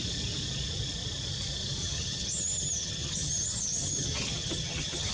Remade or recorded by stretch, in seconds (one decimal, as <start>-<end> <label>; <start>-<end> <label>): 0.0-1.8 recorded; 1.8-5.1 remade